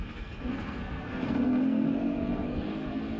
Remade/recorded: remade